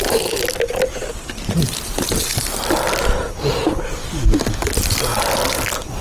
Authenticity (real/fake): real